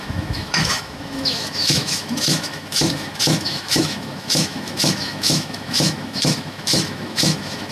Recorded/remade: remade